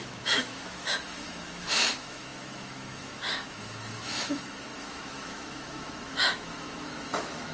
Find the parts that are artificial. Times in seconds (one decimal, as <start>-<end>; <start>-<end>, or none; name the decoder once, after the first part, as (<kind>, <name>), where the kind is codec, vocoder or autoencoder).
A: 0.0-7.5 (autoencoder, DAC-VAE)